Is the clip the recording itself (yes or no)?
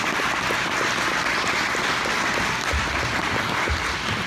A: yes